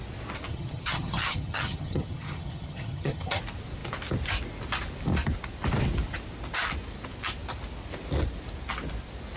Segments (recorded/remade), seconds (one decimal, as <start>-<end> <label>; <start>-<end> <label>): 0.0-0.5 recorded; 0.5-3.4 remade; 3.4-9.4 recorded

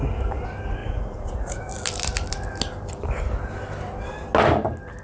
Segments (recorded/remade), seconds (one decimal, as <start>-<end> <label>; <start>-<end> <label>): 0.0-0.8 recorded; 0.8-1.7 remade; 1.7-5.0 recorded

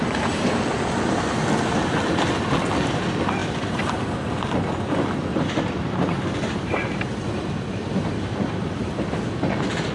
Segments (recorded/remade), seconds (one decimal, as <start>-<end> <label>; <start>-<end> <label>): 0.0-9.9 recorded

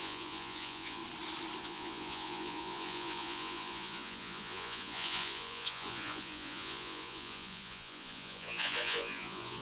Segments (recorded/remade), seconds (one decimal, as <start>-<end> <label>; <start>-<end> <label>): 0.0-1.0 remade; 1.0-1.6 recorded; 1.6-9.6 remade

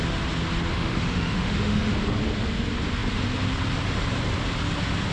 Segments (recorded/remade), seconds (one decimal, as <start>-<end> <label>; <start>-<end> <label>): 0.0-0.7 recorded; 0.7-1.9 remade; 1.9-5.1 recorded

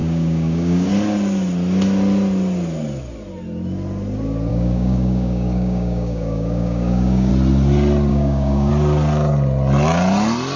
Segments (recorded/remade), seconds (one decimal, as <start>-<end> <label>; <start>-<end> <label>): 0.0-0.9 remade; 0.9-4.5 recorded; 4.5-7.3 remade; 7.3-8.1 recorded; 8.1-8.7 remade; 8.7-10.6 recorded